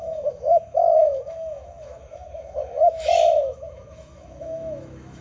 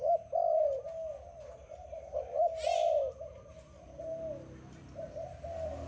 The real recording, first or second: second